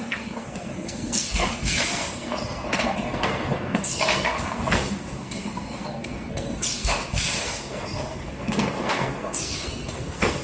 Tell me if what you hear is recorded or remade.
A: remade